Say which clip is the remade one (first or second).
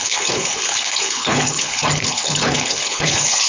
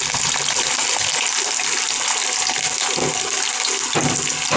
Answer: first